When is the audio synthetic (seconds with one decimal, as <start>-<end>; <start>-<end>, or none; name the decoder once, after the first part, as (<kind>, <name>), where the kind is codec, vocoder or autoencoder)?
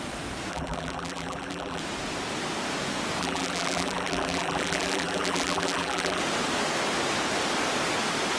0.5-1.8 (vocoder, BigVGAN v2); 3.2-6.2